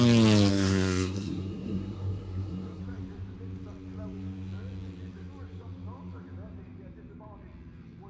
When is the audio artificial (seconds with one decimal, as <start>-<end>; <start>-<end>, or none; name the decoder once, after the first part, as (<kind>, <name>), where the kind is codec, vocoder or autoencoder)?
0.5-2.8 (codec, SNAC)